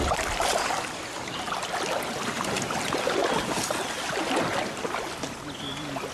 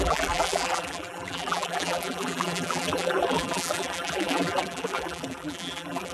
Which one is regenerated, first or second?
second